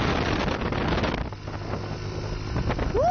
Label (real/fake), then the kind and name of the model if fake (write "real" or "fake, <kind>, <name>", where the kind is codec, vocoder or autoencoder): real